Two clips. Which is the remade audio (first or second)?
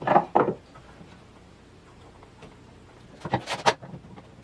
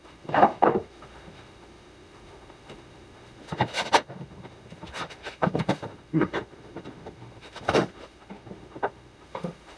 second